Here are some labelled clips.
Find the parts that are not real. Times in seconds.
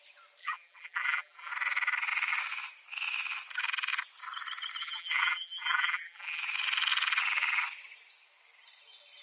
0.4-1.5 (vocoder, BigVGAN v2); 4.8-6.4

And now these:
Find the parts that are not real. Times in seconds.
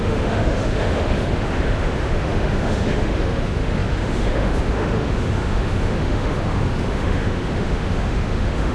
0.0-8.7 (autoencoder, DAC-VAE)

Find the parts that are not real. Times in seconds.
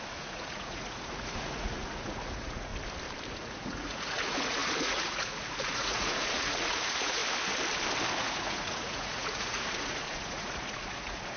0.0-2.7 (vocoder, Vocos); 3.3-7.2; 8.2-11.4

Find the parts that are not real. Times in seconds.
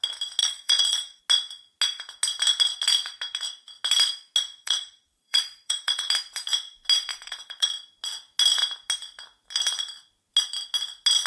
0.4-1.2 (vocoder, Vocos); 4.6-6.1; 7.1-7.7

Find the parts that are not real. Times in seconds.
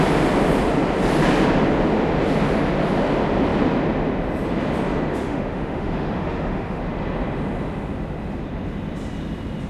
5.1-6.8 (autoencoder, DAC-VAE)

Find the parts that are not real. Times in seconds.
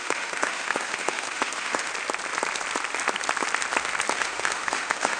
0.0-1.9 (autoencoder, DAC-VAE); 4.1-5.2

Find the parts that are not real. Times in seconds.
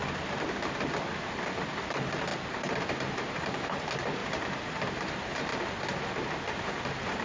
1.7-4.2 (vocoder, BigVGAN v2); 4.9-5.5; 6.4-7.2